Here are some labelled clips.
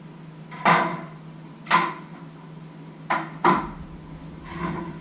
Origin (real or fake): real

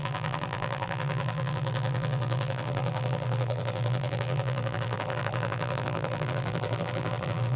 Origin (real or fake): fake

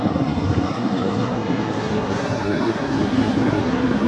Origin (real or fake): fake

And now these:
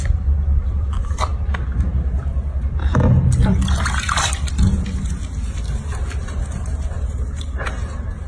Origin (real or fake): real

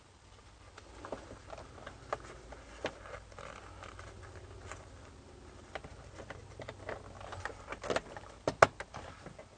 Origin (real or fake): real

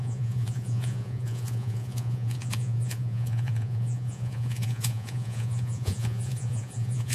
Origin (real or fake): fake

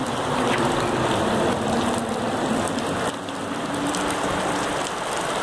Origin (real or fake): real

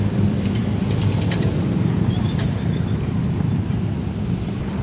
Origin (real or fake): fake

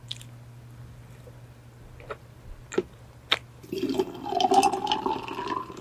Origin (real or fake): real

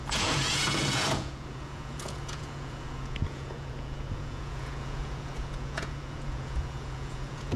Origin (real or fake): fake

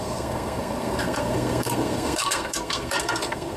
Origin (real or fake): fake